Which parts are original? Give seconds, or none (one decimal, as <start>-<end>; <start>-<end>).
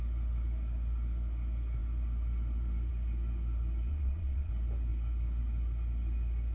0.0-3.9; 4.5-6.5